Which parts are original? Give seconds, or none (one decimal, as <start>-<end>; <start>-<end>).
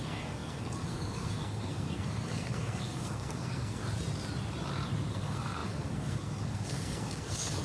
3.8-5.1